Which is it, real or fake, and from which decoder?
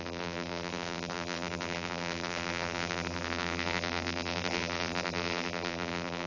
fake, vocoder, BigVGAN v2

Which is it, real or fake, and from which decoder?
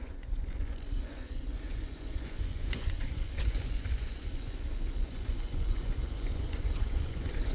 fake, vocoder, Vocos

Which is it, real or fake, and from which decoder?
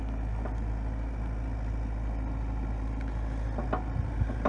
real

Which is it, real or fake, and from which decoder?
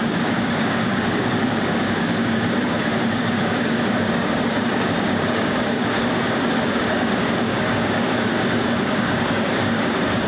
fake, codec, DAC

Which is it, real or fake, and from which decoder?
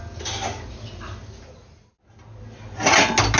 real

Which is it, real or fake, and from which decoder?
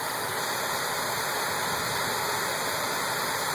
real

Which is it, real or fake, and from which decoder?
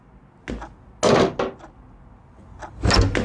real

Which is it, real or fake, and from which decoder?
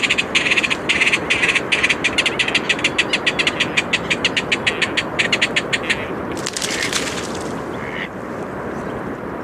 real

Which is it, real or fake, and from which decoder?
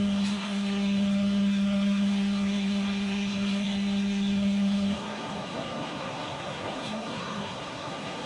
fake, codec, SNAC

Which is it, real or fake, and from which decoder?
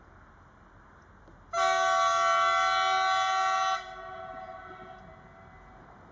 real